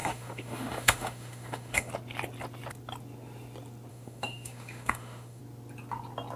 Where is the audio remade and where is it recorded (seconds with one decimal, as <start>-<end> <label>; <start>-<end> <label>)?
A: 0.0-1.9 remade; 1.9-3.9 recorded; 3.9-5.4 remade; 5.4-6.4 recorded